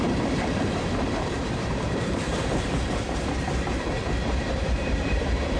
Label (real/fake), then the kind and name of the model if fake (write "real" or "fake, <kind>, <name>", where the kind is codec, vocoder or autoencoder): fake, vocoder, BigVGAN v2